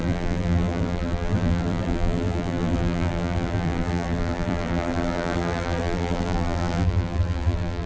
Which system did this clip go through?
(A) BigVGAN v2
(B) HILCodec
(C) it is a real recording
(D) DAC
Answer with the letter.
A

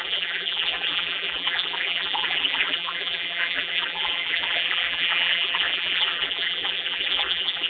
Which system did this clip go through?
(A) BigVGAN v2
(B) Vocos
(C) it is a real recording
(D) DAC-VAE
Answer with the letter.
A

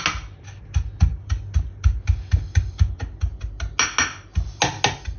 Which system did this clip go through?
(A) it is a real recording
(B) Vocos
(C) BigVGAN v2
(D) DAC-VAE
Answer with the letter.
A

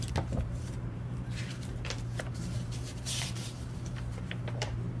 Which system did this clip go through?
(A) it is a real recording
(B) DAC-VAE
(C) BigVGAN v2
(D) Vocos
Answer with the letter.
C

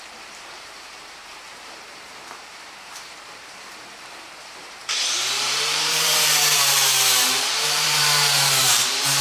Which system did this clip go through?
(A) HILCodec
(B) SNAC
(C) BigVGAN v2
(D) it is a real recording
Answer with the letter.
C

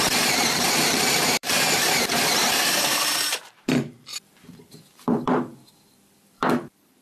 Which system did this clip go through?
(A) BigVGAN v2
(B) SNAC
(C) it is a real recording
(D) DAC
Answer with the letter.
A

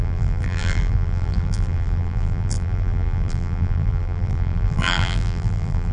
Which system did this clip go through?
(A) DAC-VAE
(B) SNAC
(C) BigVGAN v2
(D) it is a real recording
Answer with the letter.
C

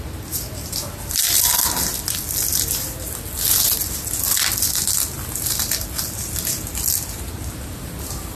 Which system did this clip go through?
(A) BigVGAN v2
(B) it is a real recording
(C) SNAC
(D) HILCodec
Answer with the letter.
B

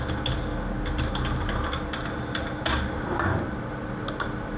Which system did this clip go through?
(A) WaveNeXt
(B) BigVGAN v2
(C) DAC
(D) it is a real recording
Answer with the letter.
D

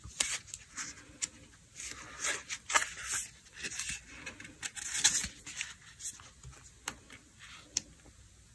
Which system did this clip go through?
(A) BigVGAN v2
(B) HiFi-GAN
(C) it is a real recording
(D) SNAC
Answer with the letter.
C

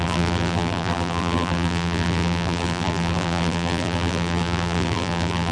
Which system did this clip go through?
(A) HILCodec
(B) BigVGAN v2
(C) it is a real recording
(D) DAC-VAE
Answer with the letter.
B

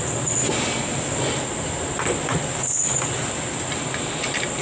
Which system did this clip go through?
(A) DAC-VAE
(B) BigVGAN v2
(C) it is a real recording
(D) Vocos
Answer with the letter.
C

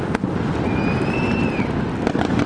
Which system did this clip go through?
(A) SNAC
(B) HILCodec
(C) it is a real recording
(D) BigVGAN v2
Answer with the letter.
C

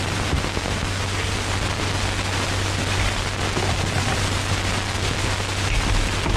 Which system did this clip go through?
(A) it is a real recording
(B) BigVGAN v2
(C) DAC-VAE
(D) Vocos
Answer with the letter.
A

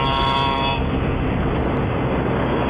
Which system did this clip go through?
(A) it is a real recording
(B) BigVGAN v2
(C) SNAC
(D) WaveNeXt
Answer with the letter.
A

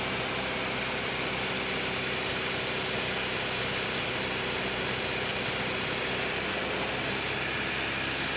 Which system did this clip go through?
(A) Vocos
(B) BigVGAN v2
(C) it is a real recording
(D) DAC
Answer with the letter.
C